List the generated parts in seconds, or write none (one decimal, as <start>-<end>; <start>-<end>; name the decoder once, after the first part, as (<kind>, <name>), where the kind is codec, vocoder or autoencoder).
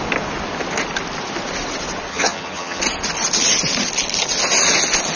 2.1-2.8 (vocoder, HiFi-GAN)